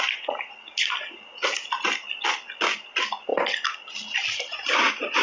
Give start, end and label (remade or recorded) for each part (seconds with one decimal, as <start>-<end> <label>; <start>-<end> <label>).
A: 0.0-5.2 recorded